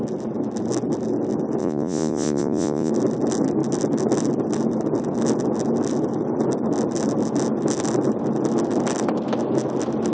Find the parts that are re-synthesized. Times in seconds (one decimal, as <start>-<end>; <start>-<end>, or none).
1.6-2.9